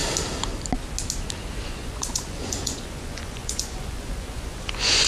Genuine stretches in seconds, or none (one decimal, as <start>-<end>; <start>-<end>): 0.0-1.6